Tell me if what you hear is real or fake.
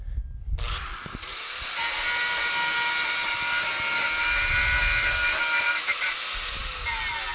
real